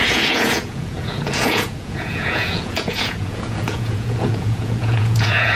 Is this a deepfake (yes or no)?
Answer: yes